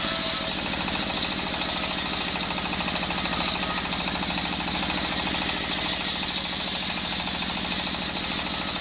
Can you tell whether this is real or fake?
real